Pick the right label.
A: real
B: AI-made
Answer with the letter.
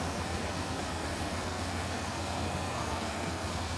B